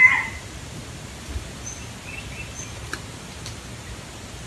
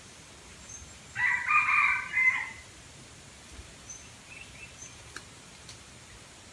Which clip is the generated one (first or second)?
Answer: second